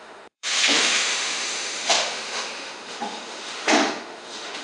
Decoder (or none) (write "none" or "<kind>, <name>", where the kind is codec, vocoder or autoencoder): autoencoder, DAC-VAE